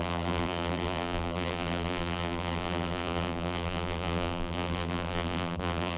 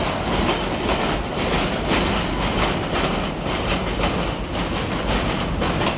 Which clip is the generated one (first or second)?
first